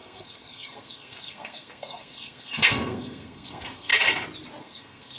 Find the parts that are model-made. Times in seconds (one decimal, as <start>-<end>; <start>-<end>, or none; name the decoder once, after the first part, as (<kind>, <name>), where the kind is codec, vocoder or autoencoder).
0.0-3.9 (codec, SNAC); 4.6-5.2